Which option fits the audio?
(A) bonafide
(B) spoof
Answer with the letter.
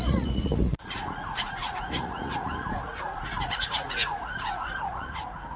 B